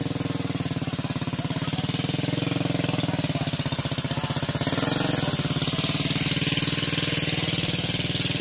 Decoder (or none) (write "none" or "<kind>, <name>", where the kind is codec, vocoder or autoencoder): none